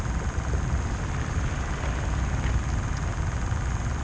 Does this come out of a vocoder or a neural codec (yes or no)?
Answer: no